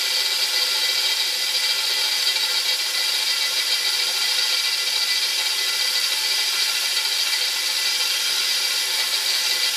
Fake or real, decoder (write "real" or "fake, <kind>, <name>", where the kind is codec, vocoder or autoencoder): real